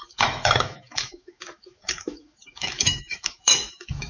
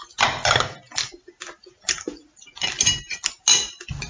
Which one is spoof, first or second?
first